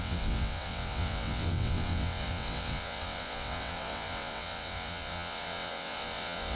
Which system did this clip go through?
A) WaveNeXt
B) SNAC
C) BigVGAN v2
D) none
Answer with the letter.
A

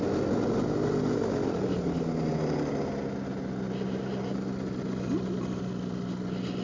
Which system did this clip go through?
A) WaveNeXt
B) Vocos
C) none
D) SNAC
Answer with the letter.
C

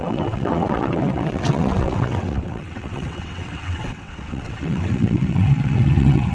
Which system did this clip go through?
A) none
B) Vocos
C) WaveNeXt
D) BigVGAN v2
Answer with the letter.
C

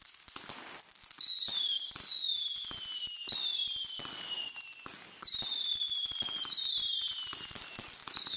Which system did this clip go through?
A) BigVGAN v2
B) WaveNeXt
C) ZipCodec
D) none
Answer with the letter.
D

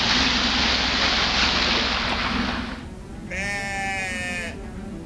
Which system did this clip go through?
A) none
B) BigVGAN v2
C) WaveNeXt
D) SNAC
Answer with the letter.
A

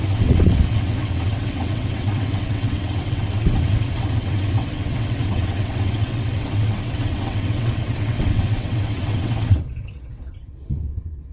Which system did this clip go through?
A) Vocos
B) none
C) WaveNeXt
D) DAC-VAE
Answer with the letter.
C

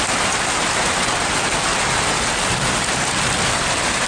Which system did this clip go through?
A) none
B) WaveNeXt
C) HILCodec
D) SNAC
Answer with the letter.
A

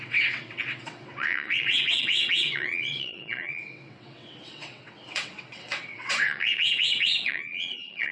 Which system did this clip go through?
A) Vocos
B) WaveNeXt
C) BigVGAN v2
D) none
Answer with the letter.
B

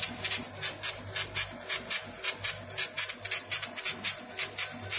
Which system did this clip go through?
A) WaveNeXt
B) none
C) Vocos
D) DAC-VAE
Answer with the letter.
B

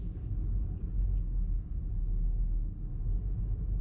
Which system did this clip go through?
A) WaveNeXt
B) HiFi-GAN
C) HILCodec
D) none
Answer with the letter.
D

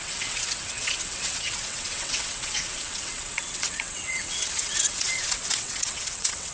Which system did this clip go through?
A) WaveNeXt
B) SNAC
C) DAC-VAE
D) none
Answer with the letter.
A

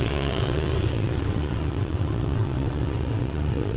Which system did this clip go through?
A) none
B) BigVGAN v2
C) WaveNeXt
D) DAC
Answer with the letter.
C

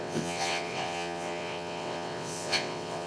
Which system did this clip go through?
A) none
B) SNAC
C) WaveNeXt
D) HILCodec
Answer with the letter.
C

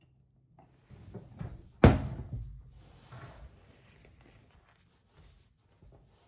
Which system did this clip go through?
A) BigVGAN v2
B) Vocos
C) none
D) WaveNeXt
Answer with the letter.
C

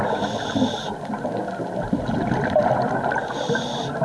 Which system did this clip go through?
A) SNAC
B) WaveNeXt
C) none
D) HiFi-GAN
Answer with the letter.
C